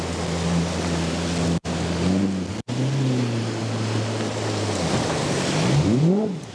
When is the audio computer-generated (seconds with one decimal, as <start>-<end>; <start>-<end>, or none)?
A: none